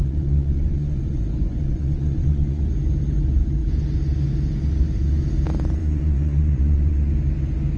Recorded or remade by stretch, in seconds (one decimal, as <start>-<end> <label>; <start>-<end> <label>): 0.0-2.6 remade; 2.6-5.8 recorded; 5.8-7.1 remade; 7.1-7.8 recorded